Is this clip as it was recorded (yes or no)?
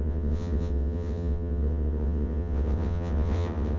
no